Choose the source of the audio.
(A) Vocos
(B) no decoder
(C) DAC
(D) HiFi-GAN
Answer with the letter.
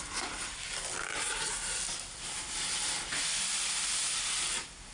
B